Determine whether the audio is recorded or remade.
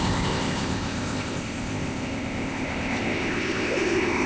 remade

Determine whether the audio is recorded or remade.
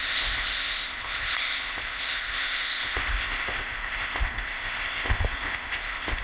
remade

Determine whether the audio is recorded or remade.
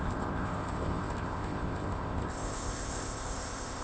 remade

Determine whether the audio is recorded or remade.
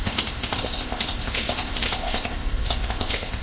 remade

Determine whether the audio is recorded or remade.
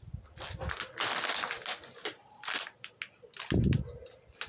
recorded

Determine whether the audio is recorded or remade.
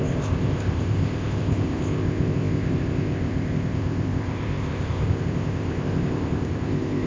remade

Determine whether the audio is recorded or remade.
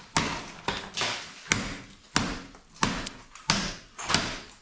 recorded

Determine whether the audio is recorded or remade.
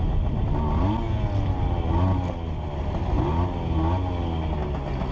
recorded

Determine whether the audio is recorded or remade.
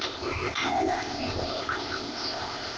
remade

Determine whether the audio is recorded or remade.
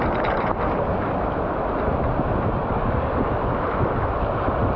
recorded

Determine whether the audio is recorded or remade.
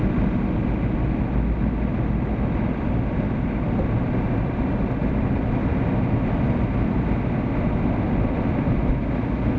recorded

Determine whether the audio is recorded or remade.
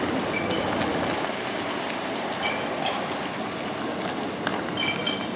recorded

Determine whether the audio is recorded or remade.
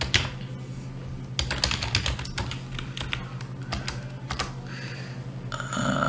recorded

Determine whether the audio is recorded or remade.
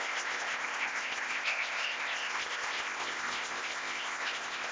remade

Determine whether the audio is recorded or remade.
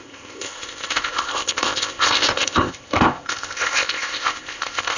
remade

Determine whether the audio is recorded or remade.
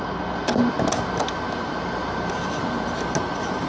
recorded